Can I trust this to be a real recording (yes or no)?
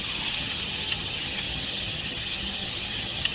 no